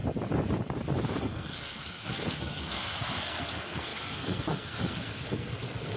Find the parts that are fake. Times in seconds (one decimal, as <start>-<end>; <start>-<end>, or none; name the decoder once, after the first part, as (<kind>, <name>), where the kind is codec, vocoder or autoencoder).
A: 1.2-6.0 (codec, SNAC)